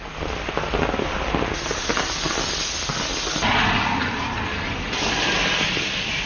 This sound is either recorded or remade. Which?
recorded